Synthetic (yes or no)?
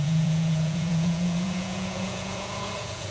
yes